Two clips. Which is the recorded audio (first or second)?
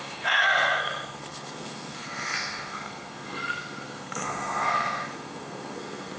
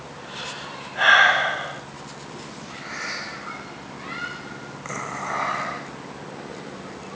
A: second